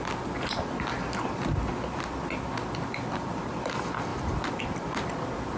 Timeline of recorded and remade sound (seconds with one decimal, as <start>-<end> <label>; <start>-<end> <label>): 0.0-5.6 recorded